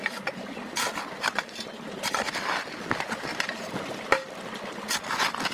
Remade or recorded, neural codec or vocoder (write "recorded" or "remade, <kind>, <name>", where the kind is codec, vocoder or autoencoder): recorded